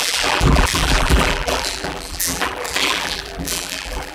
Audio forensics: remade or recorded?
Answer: remade